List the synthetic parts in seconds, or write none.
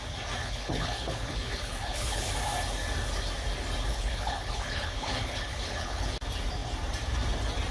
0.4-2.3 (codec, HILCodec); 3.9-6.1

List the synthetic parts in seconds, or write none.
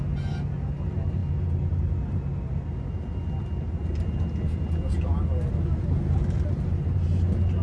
none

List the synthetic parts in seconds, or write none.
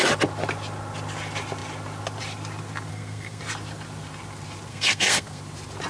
2.9-3.4 (codec, SNAC); 4.7-5.4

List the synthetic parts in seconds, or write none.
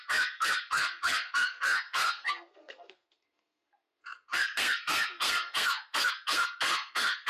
0.0-7.3 (codec, SNAC)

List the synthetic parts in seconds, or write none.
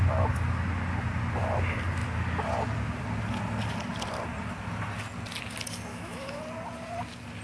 5.9-6.4 (autoencoder, DAC-VAE)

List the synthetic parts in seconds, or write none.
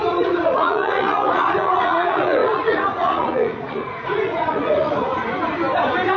0.0-5.1 (vocoder, Vocos)